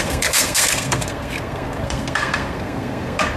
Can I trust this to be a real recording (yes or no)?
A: no